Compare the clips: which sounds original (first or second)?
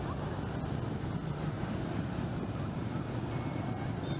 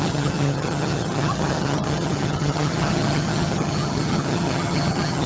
first